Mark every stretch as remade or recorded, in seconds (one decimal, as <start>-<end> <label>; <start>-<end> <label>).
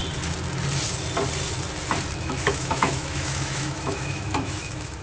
0.0-2.2 recorded; 2.2-5.0 remade